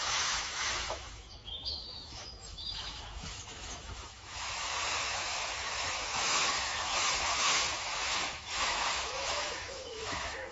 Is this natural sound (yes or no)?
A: no